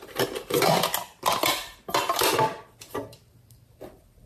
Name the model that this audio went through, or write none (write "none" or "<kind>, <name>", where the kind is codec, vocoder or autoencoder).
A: none